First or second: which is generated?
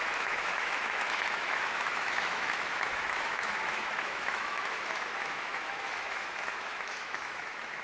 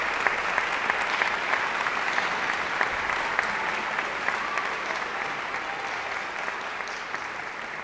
first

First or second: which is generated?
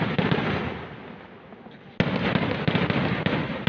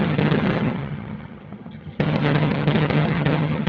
second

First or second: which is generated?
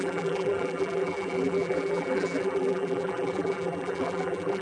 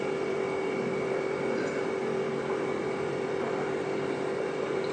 first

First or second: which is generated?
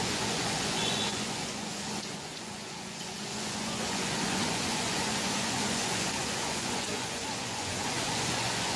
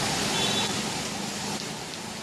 first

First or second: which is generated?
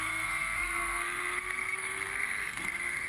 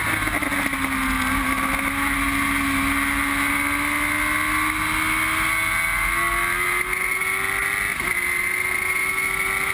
first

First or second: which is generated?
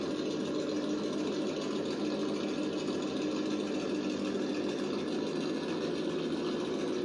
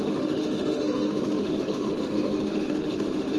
second